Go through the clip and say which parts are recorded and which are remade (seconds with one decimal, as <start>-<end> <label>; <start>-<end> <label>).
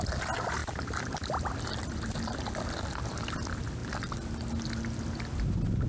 0.0-0.6 recorded; 0.6-2.5 remade; 2.5-5.9 recorded